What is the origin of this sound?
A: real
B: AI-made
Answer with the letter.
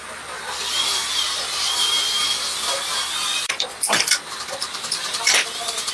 B